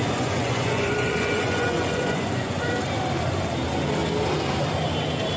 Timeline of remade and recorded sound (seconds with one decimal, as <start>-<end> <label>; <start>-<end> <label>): 0.0-2.7 remade; 2.7-5.4 recorded